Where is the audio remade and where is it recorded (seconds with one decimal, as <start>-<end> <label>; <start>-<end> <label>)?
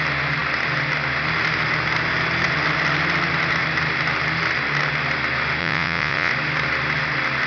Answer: 0.0-5.6 recorded; 5.6-6.3 remade; 6.3-7.5 recorded